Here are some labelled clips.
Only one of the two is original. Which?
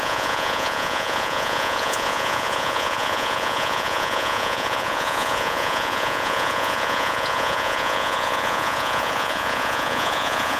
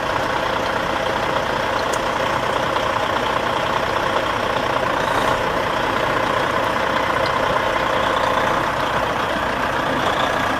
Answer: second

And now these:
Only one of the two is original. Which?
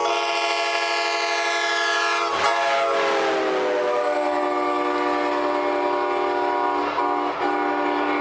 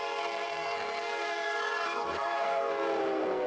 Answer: first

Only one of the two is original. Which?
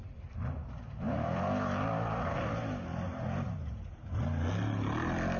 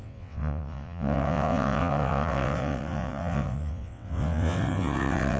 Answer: first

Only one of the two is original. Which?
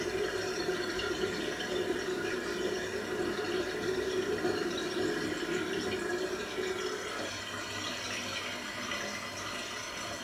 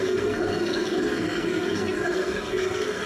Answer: first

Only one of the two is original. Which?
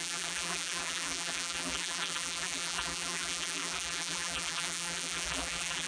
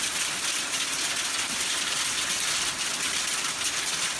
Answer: second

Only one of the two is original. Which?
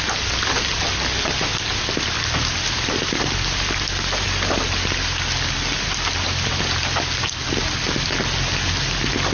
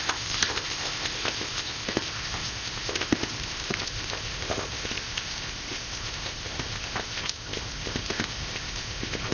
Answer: first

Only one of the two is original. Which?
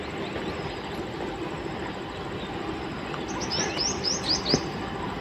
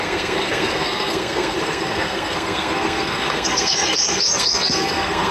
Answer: first